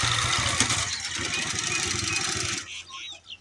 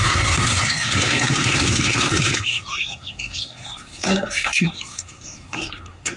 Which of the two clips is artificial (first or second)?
second